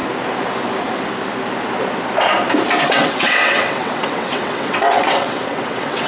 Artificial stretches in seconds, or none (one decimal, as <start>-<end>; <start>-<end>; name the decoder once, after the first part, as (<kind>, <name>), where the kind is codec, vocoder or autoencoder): 2.8-6.1 (vocoder, WaveNeXt)